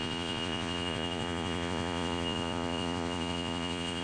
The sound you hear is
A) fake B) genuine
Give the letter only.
A